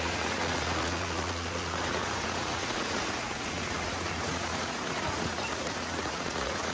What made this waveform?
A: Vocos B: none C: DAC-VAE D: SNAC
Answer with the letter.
A